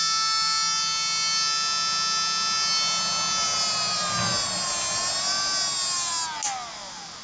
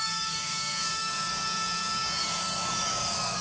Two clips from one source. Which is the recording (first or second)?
first